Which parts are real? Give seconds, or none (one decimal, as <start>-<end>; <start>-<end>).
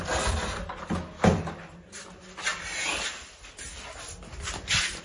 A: 0.0-5.0